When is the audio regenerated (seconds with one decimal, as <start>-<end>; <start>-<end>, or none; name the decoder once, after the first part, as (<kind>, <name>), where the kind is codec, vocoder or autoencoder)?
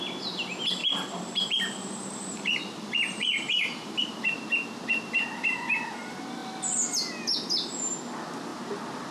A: 0.8-4.2 (vocoder, BigVGAN v2)